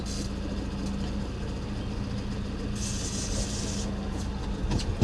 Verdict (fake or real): real